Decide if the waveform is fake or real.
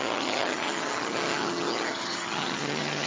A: fake